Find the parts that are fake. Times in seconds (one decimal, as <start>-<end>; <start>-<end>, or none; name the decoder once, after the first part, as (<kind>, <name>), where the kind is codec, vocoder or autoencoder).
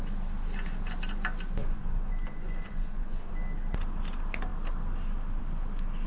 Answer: 1.6-3.3 (vocoder, Vocos)